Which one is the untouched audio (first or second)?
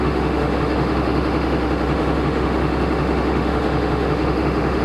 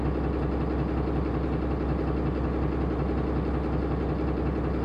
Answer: second